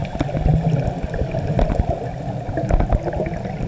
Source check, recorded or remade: recorded